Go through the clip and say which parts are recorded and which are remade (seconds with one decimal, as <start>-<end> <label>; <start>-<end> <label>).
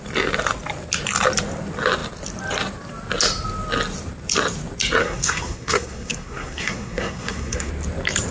0.0-5.0 recorded; 5.0-7.7 remade; 7.7-8.3 recorded